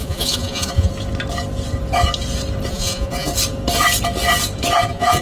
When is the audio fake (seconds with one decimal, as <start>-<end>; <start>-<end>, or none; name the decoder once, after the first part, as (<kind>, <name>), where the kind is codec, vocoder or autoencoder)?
0.0-0.9 (vocoder, Vocos); 2.7-3.3; 4.8-5.2